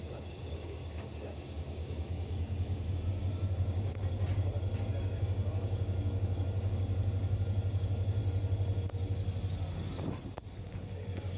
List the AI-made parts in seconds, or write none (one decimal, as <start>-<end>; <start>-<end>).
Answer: 0.0-4.0; 4.9-8.2; 10.6-11.4